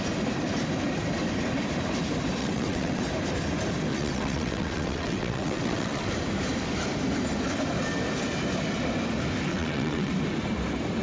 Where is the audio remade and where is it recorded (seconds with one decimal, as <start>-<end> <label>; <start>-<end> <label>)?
0.0-2.4 recorded; 2.4-3.0 remade; 3.0-3.9 recorded; 3.9-6.1 remade; 6.1-9.5 recorded; 9.5-10.1 remade; 10.1-11.0 recorded